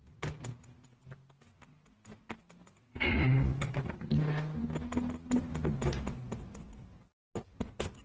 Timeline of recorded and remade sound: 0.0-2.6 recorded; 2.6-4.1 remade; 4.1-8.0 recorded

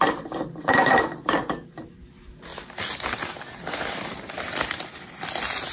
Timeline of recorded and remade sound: 0.0-2.5 recorded; 2.5-5.1 remade; 5.1-5.7 recorded

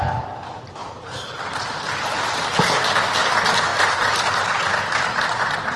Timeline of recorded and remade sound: 0.0-3.7 recorded; 3.7-5.8 remade

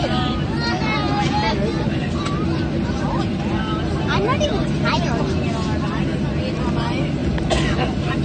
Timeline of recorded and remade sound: 0.0-8.2 recorded